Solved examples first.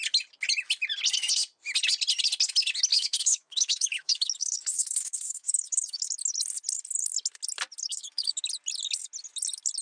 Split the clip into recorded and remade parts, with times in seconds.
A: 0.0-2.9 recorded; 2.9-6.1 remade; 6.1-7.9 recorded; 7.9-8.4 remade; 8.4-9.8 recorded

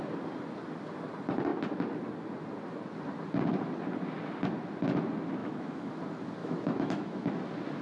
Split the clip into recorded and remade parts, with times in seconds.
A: 0.0-5.4 recorded; 5.4-5.9 remade; 5.9-6.4 recorded; 6.4-7.3 remade; 7.3-7.8 recorded